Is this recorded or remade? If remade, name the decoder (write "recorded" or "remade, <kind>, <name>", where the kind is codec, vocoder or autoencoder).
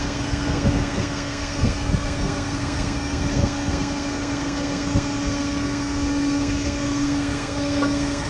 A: remade, codec, SNAC